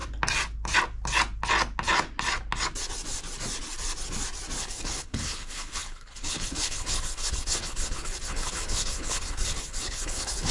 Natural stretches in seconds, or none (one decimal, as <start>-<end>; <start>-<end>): 0.0-4.6